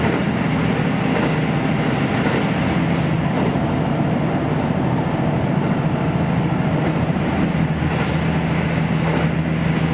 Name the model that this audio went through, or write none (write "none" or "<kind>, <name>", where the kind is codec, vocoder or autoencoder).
none